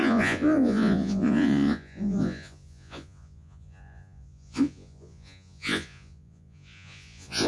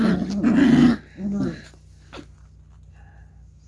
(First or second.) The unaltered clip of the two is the second